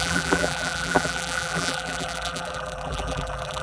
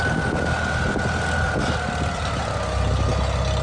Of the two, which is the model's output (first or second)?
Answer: first